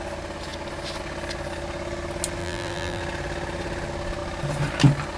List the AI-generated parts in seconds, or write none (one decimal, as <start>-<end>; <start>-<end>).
2.4-3.0

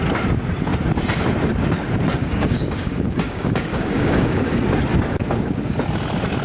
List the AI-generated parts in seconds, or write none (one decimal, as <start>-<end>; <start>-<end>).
2.2-4.6

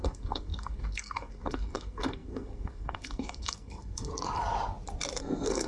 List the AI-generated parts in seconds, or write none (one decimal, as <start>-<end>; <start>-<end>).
0.0-4.1; 5.2-5.7

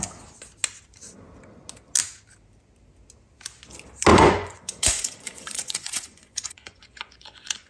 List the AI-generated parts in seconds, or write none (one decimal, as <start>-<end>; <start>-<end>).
4.1-7.7

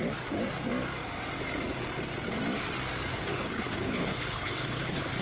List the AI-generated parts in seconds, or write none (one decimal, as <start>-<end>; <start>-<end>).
3.1-5.2

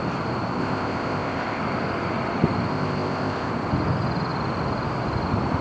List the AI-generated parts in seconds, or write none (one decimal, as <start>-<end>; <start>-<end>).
0.6-1.6; 2.7-3.5

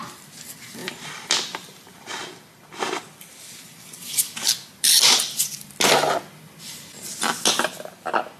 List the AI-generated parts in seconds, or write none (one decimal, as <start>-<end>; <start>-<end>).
0.8-5.4

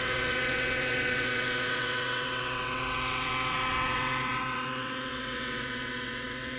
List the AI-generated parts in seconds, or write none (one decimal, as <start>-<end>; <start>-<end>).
0.0-6.6